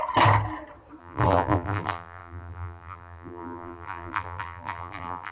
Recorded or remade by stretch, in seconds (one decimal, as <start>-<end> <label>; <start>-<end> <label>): 0.0-1.0 recorded; 1.0-5.3 remade